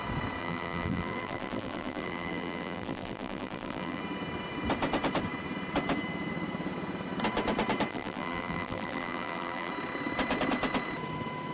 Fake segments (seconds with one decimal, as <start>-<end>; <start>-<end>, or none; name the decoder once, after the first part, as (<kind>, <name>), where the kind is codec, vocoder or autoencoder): 0.4-4.0 (vocoder, BigVGAN v2); 7.9-9.7